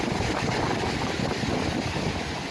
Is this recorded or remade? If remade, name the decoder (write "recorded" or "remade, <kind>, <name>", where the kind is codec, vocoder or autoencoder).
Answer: recorded